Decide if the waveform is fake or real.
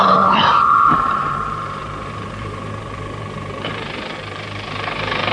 fake